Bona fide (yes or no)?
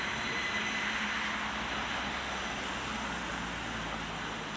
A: yes